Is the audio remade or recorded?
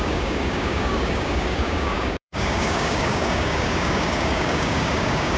remade